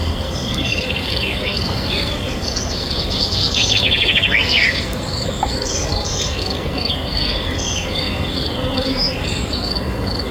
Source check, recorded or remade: remade